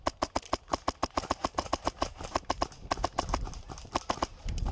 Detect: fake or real fake